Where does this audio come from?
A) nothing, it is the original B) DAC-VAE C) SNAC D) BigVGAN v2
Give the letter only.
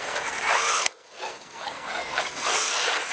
C